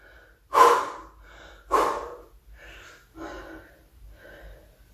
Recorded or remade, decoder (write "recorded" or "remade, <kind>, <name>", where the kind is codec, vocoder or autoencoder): recorded